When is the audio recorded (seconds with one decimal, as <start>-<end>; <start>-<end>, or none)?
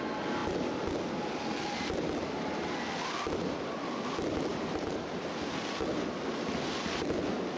0.0-4.5; 5.2-7.6